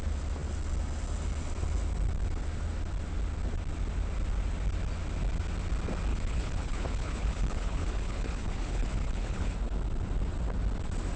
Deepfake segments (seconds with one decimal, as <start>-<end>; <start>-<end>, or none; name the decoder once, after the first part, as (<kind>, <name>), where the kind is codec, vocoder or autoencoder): 6.1-9.5 (codec, HILCodec)

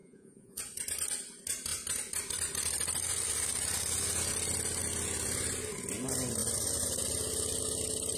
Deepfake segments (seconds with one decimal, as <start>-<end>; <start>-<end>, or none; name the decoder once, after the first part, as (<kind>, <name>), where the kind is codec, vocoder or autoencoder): 0.0-0.6 (vocoder, Vocos)

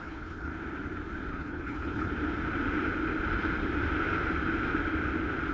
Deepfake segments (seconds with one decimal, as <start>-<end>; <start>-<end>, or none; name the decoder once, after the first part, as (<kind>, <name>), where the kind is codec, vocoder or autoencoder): 0.0-0.5 (codec, HILCodec); 1.3-2.1

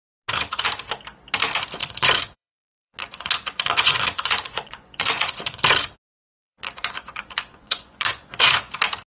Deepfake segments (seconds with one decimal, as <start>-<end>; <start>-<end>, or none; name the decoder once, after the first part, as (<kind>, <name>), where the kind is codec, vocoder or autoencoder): 1.8-5.6 (vocoder, Vocos); 6.4-8.4

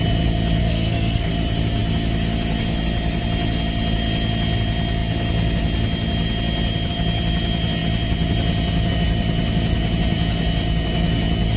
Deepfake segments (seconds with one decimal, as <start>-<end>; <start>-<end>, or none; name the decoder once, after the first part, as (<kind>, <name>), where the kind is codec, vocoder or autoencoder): 0.6-1.3 (codec, SNAC)

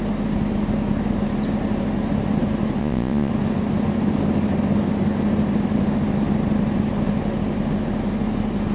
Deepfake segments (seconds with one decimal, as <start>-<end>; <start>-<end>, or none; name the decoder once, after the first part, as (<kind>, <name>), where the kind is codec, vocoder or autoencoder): 2.8-3.3 (vocoder, Vocos)

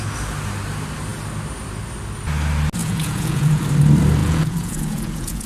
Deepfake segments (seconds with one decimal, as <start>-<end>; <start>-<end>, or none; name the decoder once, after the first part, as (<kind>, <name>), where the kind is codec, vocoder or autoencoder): 2.8-3.6 (vocoder, Vocos); 4.2-5.5